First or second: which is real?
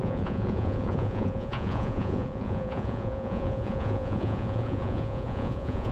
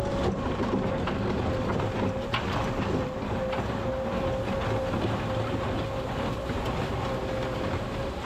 second